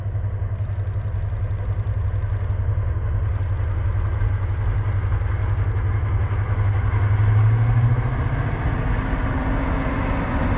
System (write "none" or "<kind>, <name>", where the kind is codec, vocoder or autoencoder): none